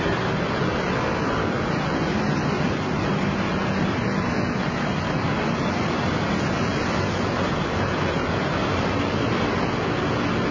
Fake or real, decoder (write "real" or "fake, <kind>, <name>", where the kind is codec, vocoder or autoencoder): real